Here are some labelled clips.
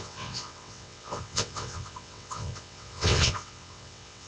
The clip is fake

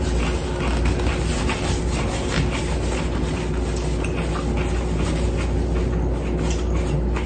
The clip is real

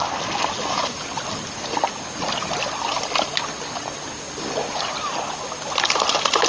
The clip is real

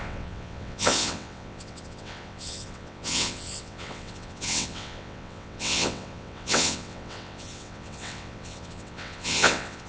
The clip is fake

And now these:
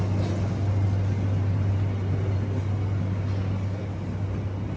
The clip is real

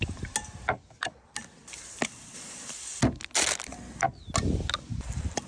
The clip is real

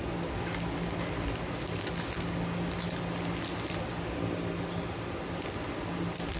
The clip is real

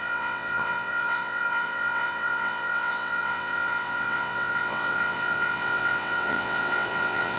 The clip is fake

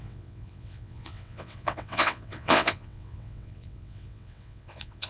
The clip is fake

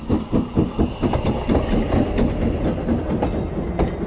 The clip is real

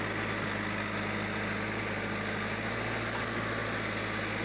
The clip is real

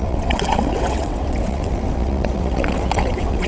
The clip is fake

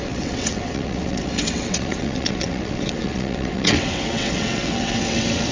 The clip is fake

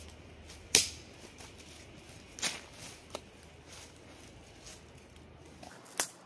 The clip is real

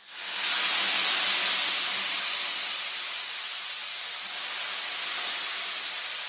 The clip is real